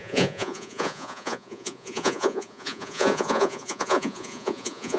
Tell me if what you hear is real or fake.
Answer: fake